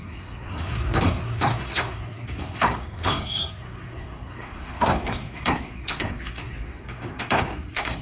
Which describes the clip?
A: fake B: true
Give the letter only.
A